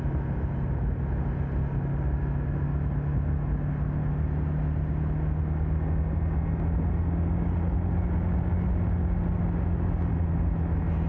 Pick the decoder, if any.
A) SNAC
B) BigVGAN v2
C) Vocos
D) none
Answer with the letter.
D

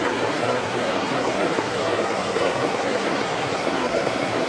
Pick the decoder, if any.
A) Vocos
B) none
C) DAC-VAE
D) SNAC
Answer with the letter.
D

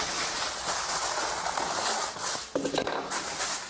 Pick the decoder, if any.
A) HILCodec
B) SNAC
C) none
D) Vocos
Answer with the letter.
C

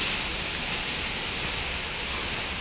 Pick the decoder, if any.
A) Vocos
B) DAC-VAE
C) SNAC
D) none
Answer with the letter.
D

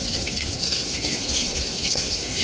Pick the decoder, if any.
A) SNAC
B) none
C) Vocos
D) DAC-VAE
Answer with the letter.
A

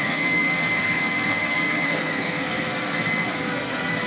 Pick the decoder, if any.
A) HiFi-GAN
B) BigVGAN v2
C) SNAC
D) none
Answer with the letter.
C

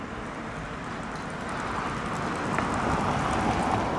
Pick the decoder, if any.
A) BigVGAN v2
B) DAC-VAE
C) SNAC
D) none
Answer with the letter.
D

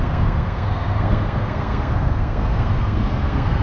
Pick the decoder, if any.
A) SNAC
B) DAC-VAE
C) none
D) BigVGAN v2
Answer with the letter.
A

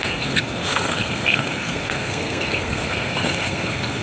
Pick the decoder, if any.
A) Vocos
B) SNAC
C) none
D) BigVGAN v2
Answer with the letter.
B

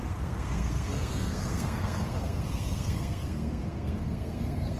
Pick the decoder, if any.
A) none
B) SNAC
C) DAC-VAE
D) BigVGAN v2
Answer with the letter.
B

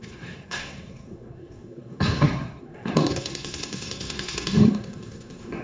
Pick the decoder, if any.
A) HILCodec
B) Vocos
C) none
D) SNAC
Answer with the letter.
D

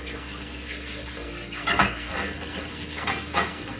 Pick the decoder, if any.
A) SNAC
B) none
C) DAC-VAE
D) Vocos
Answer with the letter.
A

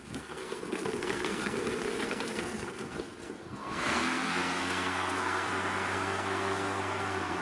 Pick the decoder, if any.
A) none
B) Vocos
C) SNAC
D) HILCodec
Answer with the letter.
C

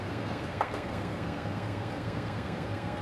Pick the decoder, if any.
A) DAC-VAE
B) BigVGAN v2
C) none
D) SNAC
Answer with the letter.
D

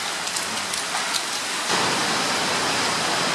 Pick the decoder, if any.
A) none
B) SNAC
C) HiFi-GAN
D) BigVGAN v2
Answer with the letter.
A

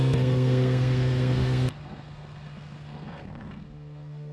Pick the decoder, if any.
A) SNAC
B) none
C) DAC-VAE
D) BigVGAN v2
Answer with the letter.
A